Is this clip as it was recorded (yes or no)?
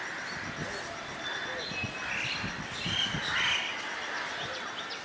yes